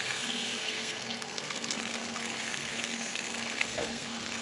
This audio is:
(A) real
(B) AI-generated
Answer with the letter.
B